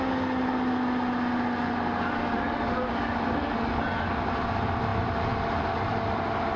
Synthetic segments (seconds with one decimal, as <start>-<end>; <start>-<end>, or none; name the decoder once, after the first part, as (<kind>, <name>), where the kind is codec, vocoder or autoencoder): none

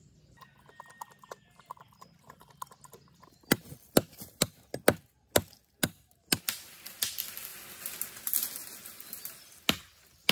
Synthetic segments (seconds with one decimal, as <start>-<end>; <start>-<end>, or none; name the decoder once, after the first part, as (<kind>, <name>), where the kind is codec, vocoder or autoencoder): none